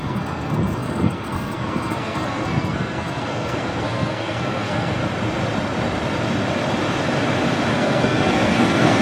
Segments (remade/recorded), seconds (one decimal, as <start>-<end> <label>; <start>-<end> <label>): 0.0-5.0 remade; 5.0-7.7 recorded; 7.7-9.0 remade